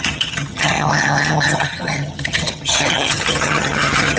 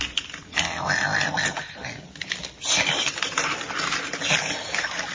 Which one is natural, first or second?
second